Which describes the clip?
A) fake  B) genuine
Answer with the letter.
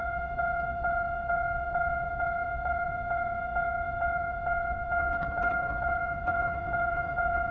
A